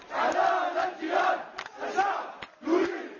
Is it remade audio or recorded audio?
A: recorded